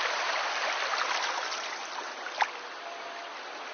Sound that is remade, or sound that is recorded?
recorded